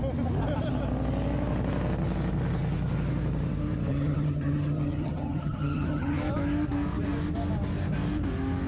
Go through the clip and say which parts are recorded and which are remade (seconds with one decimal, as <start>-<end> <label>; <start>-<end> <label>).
0.0-3.9 recorded; 3.9-6.2 remade; 6.2-8.7 recorded